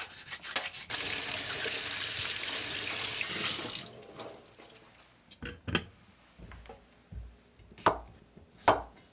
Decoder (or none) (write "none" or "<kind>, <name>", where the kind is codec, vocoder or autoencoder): none